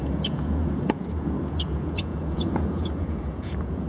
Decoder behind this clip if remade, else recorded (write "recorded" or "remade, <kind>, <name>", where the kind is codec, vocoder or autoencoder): remade, vocoder, Vocos